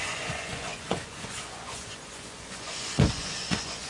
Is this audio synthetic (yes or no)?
yes